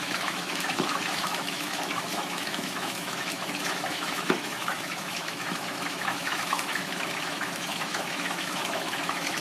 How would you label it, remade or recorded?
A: remade